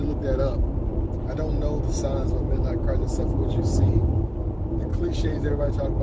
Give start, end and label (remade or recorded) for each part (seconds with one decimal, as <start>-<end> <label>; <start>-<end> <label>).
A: 0.0-4.9 recorded; 4.9-5.5 remade; 5.5-6.0 recorded